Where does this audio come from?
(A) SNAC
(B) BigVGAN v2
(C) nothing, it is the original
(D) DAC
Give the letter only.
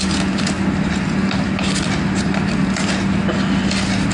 C